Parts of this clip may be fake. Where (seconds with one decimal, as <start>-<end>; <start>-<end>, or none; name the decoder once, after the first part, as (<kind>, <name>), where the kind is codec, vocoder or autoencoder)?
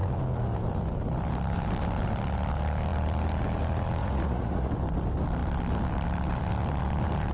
4.0-4.7 (vocoder, Vocos)